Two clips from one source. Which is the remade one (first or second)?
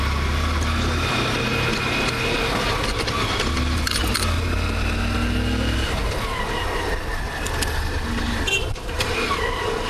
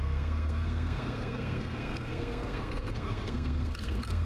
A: second